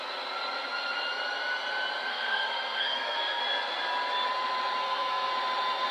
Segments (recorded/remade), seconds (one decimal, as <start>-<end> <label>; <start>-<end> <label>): 0.0-2.1 recorded; 2.1-3.4 remade; 3.4-4.8 recorded; 4.8-5.3 remade; 5.3-5.9 recorded